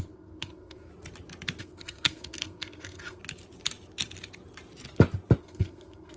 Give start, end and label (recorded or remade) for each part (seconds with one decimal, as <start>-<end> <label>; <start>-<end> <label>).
0.0-0.9 remade; 0.9-1.6 recorded; 1.6-3.2 remade; 3.2-5.4 recorded; 5.4-6.2 remade